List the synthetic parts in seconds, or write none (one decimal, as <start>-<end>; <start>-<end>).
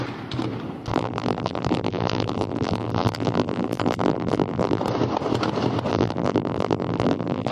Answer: 0.9-4.8; 5.9-7.5